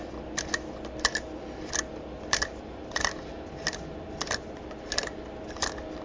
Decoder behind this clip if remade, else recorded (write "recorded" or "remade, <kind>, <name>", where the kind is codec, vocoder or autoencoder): recorded